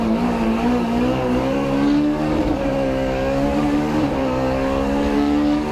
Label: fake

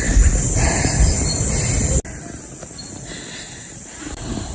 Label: real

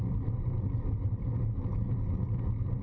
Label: real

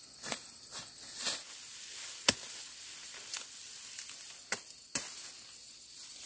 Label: real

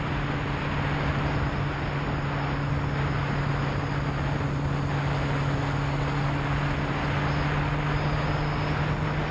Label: real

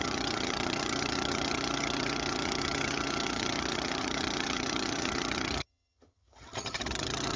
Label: fake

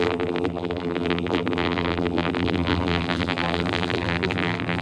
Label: fake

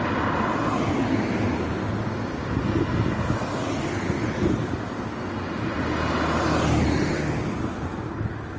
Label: real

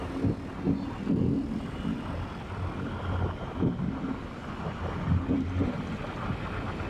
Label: real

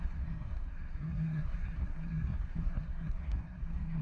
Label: fake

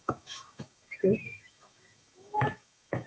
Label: fake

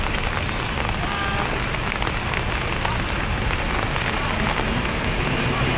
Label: real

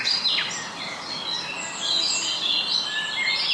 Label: real